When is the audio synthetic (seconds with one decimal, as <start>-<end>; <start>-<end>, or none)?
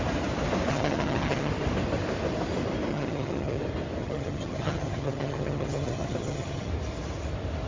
0.7-1.5; 2.9-3.6; 4.0-6.7